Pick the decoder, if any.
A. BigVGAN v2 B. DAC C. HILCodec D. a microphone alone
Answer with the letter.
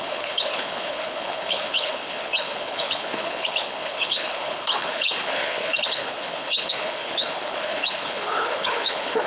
C